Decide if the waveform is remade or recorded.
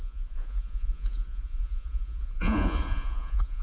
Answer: remade